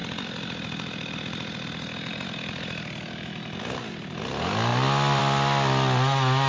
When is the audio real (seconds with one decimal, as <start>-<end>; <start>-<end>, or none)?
0.0-6.5